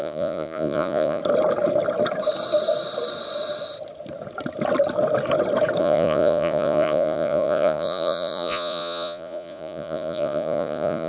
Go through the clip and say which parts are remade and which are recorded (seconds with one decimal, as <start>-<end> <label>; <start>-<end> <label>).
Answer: 0.0-1.2 remade; 1.2-5.8 recorded; 5.8-11.1 remade